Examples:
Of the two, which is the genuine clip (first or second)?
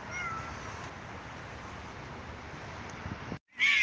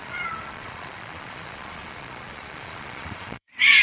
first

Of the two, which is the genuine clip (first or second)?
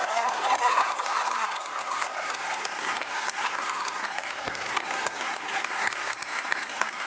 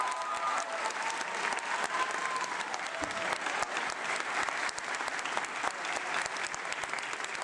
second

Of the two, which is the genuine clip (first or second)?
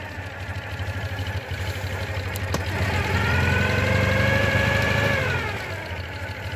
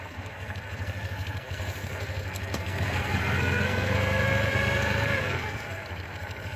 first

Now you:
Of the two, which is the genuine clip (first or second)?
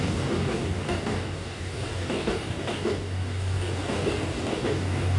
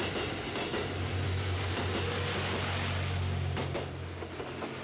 second